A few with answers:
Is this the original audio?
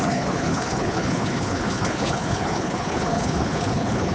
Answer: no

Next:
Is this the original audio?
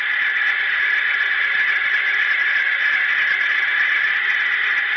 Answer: yes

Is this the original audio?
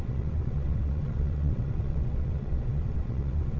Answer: no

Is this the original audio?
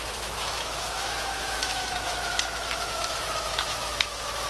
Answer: no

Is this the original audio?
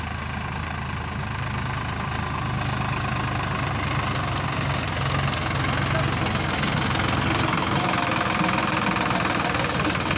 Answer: yes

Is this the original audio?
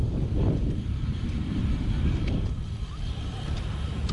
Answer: no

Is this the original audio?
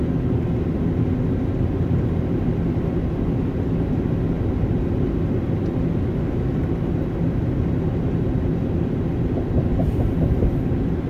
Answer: yes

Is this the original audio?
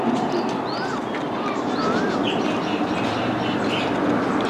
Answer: yes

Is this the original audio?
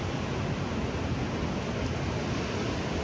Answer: yes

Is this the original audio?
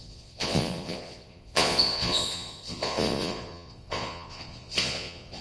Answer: no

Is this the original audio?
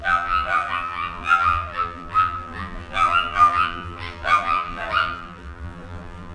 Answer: no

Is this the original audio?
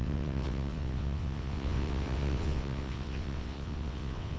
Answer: no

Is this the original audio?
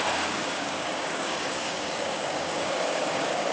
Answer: no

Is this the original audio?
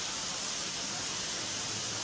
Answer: yes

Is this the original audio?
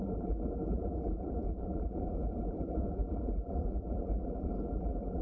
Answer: no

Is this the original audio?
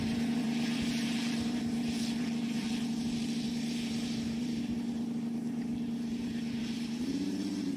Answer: no